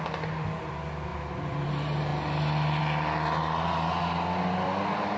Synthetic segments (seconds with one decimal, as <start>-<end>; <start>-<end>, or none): none